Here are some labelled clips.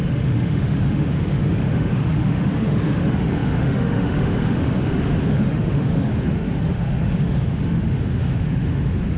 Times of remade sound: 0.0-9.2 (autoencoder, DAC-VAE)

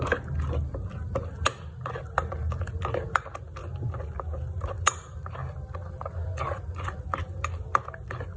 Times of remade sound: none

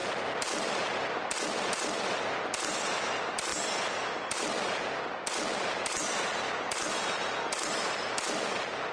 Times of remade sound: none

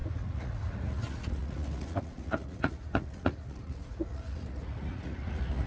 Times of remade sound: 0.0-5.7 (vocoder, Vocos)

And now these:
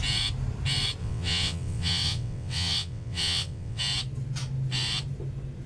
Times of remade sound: 1.0-3.8 (vocoder, WaveNeXt)

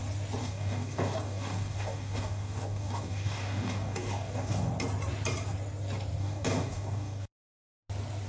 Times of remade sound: 0.4-4.7 (codec, DAC); 6.2-7.3

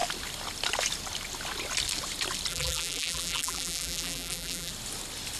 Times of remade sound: 2.5-4.7 (vocoder, BigVGAN v2)

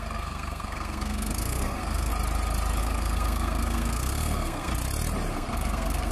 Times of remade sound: 0.0-2.1 (codec, SNAC); 2.8-4.7; 5.3-6.1